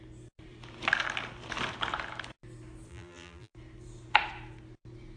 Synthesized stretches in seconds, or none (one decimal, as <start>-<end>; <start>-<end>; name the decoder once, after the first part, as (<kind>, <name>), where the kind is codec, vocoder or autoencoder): 2.9-3.5 (vocoder, BigVGAN v2)